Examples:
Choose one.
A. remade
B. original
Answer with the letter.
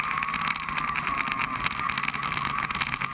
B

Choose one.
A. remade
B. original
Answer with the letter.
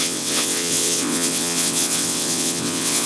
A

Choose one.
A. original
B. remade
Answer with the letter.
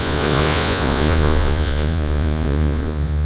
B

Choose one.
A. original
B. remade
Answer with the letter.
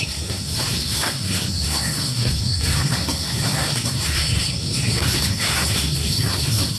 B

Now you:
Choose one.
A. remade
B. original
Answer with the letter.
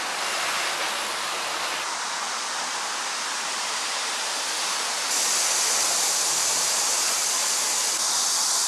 B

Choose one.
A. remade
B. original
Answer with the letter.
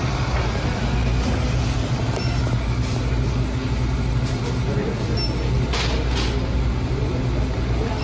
B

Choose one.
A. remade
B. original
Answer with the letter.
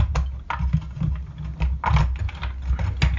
B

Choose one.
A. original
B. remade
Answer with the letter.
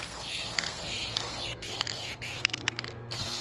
B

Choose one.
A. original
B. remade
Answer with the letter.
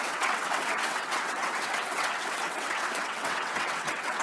B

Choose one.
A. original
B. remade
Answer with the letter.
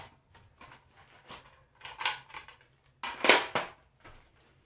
A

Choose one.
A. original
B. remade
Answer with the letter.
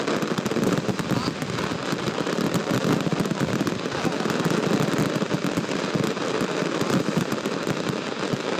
A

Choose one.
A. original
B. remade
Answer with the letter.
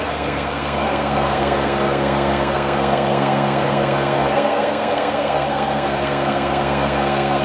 B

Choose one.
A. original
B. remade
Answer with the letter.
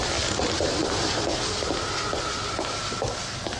A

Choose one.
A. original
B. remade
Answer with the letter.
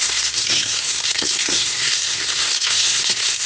B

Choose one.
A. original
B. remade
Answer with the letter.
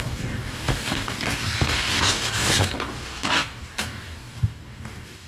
B